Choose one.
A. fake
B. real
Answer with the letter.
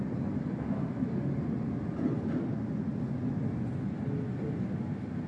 B